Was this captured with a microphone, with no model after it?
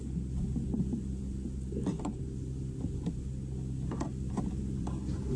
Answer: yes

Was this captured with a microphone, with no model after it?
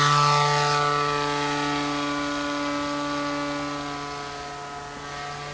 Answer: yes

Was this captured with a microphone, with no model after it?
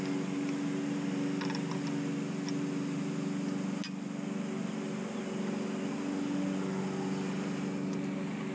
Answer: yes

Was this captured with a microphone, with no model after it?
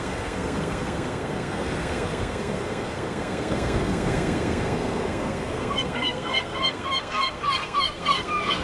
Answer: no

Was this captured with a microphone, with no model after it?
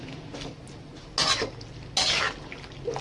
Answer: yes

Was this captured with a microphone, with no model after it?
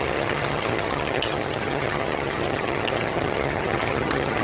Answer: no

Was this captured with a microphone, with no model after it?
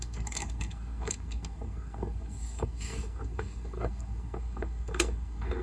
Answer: no